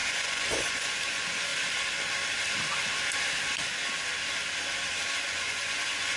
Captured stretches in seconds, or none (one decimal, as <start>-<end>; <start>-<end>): 1.5-5.2